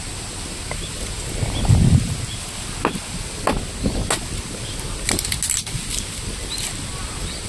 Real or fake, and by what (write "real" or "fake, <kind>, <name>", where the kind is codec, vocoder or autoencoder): real